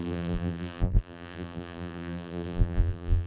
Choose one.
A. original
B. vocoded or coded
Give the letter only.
B